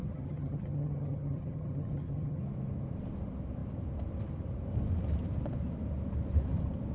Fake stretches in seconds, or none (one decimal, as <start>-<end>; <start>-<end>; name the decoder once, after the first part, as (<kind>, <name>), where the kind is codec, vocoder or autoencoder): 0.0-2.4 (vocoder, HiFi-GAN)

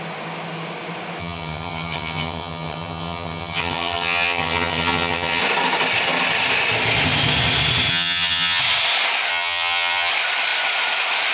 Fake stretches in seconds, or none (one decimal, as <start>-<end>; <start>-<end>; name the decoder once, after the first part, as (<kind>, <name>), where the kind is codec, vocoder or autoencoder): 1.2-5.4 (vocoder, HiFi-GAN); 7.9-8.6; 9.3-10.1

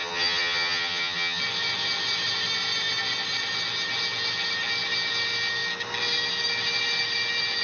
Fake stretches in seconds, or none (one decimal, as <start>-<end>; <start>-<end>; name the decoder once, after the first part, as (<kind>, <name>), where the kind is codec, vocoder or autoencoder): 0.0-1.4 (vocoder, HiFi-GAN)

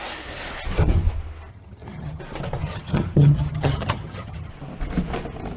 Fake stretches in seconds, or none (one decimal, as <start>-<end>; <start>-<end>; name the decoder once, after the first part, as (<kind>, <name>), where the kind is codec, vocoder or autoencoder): 1.5-2.2 (vocoder, HiFi-GAN); 2.6-4.5